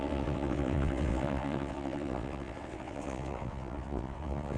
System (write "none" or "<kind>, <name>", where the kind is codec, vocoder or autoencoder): vocoder, WaveNeXt